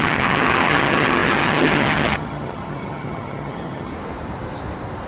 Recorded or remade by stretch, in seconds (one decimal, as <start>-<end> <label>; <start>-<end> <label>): 0.0-3.9 remade; 3.9-5.1 recorded